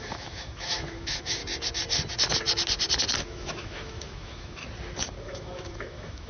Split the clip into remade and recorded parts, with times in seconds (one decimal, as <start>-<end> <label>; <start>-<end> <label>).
0.0-1.4 remade; 1.4-3.2 recorded; 3.2-4.6 remade; 4.6-5.2 recorded; 5.2-6.3 remade